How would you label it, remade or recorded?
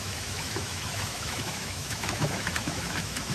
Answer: remade